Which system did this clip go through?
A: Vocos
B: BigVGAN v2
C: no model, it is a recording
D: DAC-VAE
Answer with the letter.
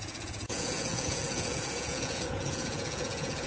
A